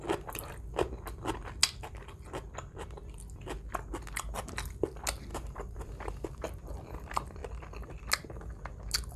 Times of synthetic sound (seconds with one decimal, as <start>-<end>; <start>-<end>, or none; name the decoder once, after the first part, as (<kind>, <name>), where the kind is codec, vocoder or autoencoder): 5.3-6.3 (vocoder, BigVGAN v2)